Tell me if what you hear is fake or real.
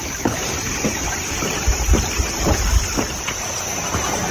real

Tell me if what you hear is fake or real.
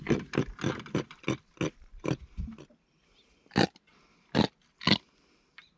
real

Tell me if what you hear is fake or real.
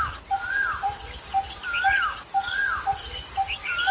real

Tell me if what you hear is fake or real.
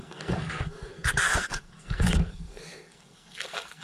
fake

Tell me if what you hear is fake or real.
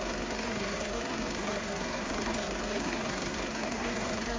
fake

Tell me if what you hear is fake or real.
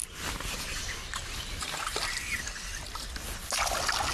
real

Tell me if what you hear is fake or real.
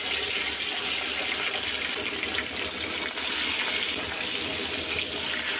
real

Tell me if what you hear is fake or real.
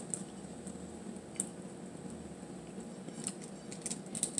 real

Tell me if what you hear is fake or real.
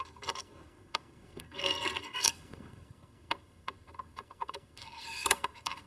fake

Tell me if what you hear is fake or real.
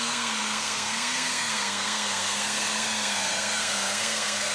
fake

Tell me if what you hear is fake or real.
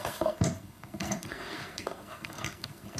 fake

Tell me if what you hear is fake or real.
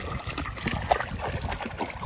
real